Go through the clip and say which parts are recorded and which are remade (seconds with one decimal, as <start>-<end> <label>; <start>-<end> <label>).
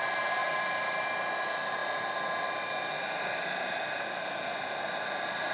0.0-0.4 recorded; 0.4-1.0 remade; 1.0-5.5 recorded